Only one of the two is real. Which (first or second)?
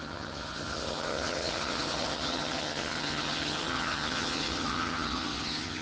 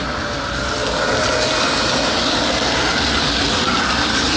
second